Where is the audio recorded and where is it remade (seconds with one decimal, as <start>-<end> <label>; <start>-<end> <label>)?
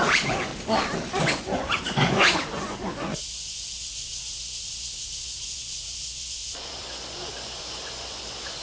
0.0-0.5 remade; 0.5-1.2 recorded; 1.2-8.6 remade